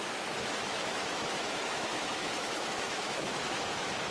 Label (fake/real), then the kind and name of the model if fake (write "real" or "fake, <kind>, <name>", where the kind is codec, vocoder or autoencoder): fake, autoencoder, DAC-VAE